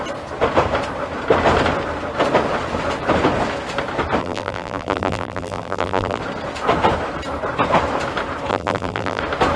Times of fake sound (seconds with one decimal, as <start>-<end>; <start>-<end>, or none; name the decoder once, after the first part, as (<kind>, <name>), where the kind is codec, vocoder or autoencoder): 4.2-6.2 (vocoder, BigVGAN v2); 8.5-9.2

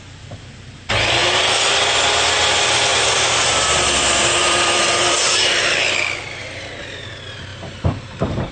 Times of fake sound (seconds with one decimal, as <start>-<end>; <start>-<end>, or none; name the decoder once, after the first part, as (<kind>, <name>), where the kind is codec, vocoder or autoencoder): 2.9-6.4 (vocoder, BigVGAN v2); 7.5-8.5

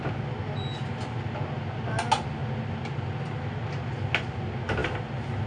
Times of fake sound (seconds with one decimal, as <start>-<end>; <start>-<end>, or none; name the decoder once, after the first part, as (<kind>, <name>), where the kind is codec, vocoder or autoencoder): 4.8-5.5 (vocoder, BigVGAN v2)

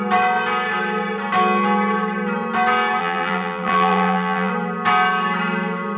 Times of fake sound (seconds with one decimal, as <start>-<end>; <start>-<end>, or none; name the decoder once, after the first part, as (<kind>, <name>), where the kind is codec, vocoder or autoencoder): 3.0-4.5 (vocoder, BigVGAN v2)

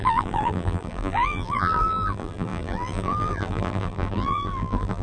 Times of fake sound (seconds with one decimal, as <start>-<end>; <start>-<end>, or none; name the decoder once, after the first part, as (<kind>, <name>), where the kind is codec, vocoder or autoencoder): 0.0-5.0 (vocoder, BigVGAN v2)

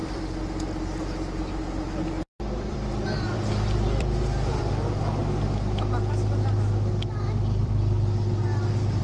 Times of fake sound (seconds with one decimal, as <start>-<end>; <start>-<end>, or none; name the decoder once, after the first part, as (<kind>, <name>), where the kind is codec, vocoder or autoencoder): 0.0-5.2 (vocoder, BigVGAN v2); 7.6-9.0

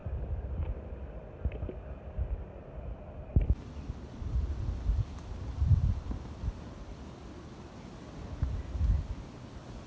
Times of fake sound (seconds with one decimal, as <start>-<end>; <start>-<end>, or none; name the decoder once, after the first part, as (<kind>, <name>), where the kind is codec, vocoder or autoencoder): 0.0-0.5 (vocoder, BigVGAN v2); 3.3-4.6; 5.6-7.2